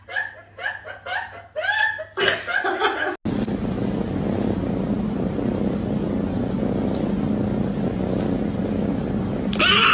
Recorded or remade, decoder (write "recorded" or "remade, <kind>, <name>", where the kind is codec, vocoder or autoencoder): recorded